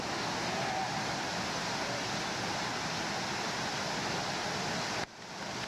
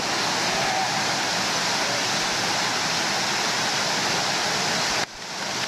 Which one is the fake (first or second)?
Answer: second